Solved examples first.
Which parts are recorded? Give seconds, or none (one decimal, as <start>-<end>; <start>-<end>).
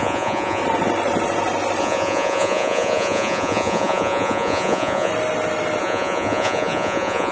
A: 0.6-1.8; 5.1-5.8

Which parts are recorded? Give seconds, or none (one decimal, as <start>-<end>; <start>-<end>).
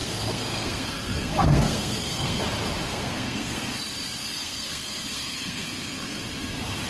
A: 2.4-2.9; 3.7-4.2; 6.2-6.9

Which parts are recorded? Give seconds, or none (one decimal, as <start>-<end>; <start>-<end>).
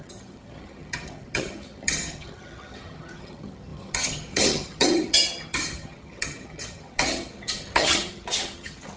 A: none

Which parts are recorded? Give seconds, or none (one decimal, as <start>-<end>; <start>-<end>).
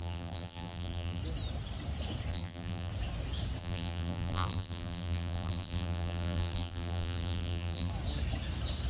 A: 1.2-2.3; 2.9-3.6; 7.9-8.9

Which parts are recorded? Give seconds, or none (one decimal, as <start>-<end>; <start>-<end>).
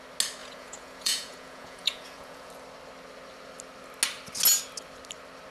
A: 0.0-0.4; 2.5-5.5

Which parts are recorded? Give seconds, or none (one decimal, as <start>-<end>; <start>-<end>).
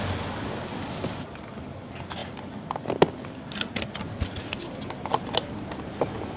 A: 0.0-6.4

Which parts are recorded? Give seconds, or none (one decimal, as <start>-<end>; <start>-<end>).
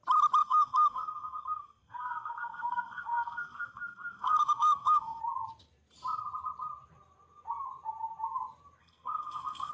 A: 0.0-0.4; 5.2-8.8